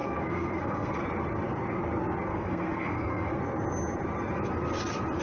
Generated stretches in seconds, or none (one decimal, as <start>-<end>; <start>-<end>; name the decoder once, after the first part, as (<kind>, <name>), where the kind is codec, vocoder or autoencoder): 0.0-1.0 (codec, SNAC); 2.3-3.4